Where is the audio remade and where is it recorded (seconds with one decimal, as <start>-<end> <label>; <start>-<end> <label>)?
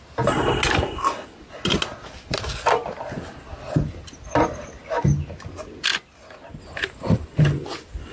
0.0-8.1 recorded